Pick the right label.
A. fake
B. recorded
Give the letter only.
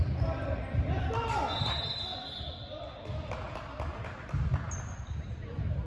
B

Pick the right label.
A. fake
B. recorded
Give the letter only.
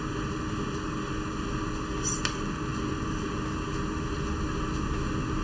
B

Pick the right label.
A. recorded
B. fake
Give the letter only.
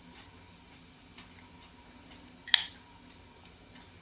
A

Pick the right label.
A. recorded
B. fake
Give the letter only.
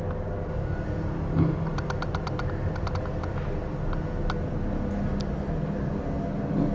A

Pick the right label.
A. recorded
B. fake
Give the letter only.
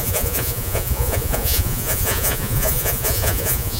B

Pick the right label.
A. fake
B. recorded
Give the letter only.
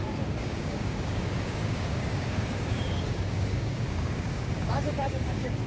A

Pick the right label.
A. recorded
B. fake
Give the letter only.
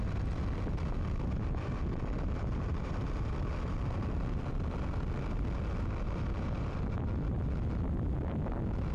A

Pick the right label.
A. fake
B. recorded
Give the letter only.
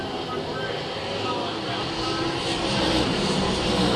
B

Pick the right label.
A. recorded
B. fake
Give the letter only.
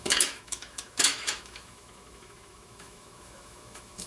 B